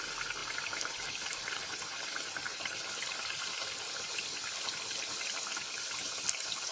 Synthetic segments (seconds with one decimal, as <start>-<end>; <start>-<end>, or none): 0.4-3.5